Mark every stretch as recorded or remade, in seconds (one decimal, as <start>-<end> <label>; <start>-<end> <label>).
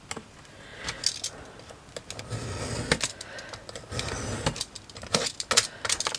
0.0-6.2 recorded